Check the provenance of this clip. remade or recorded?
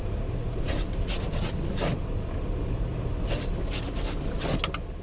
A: recorded